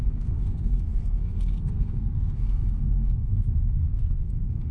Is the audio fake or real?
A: fake